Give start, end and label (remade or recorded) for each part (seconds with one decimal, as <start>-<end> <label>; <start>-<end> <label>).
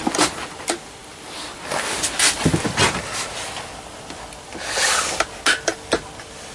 0.0-6.5 recorded